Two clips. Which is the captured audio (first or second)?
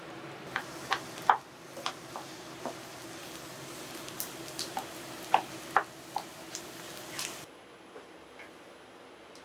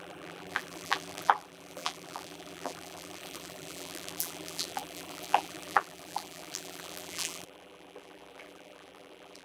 first